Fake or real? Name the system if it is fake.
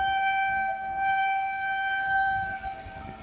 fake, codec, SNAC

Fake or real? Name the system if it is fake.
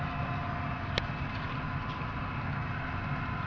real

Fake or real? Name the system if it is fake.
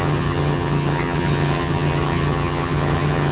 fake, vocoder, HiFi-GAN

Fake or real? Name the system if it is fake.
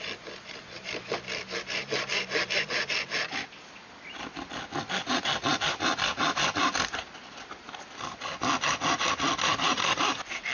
real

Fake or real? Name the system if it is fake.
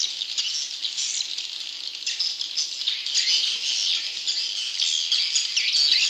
real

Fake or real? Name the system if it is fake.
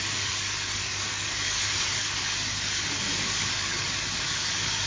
fake, codec, DAC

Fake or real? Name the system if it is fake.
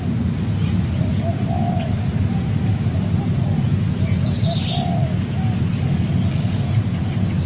real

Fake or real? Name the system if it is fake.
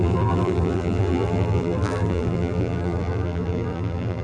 fake, vocoder, BigVGAN v2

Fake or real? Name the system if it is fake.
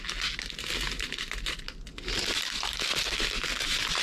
real